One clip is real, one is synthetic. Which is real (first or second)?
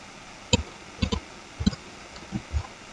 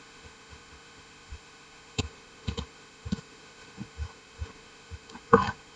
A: first